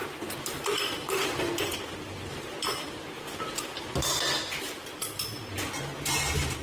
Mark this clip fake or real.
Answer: real